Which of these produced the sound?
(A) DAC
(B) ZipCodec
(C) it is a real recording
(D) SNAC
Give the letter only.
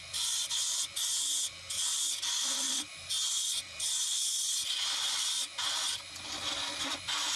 C